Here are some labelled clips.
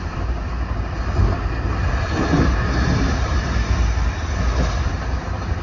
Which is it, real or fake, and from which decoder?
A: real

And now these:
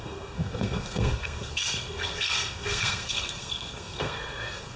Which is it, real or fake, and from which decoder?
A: fake, codec, SNAC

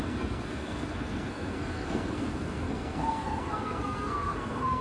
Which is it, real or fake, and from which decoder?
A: fake, codec, SNAC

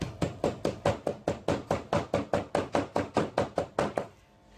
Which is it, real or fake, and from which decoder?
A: real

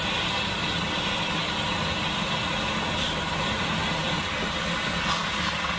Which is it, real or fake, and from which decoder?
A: real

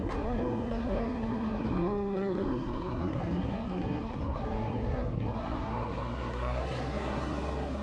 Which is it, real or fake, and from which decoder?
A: fake, codec, SNAC